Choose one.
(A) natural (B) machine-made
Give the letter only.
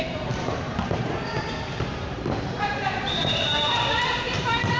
B